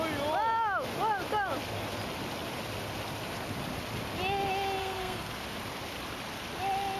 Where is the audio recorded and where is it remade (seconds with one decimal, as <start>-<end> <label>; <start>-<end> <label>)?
0.0-4.8 recorded; 4.8-5.3 remade; 5.3-7.0 recorded

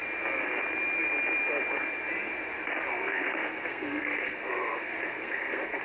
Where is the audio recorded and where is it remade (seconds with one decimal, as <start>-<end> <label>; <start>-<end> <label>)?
0.0-2.9 recorded; 2.9-5.8 remade